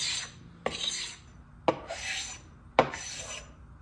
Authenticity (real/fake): real